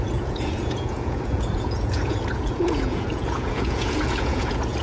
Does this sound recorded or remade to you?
remade